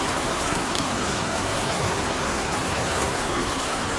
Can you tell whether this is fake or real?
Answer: fake